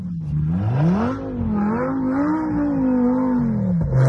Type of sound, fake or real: real